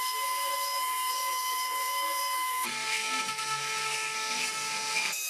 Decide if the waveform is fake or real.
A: fake